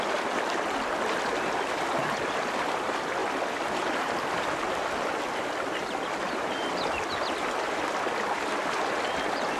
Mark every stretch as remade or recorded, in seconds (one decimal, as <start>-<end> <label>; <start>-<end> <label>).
0.0-9.6 recorded